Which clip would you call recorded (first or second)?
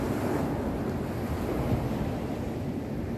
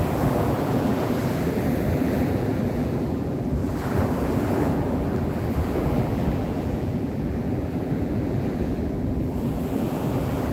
first